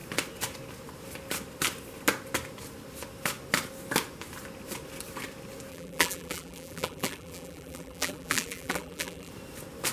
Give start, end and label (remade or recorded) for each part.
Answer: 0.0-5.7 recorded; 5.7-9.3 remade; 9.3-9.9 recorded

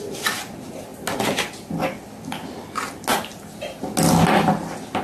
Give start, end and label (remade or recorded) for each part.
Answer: 0.0-5.0 recorded